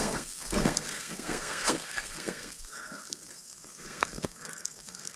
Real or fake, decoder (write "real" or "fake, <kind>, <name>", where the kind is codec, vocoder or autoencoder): fake, codec, SNAC